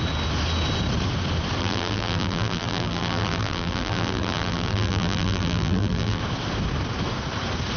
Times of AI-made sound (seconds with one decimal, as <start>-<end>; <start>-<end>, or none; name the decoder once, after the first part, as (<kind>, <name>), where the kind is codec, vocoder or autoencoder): 1.6-6.2 (vocoder, BigVGAN v2)